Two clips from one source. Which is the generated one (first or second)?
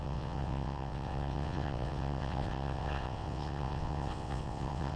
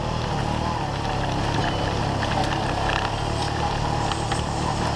first